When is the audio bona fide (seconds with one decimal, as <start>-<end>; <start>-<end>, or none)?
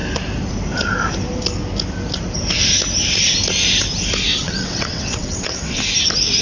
0.0-4.3; 5.8-6.4